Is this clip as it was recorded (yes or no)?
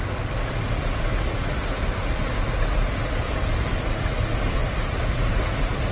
yes